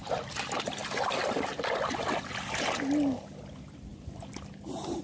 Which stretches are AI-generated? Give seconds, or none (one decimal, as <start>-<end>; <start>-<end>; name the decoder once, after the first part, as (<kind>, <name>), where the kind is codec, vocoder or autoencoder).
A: none